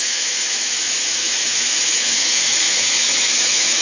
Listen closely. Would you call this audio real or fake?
fake